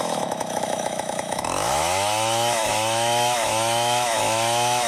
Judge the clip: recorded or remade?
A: remade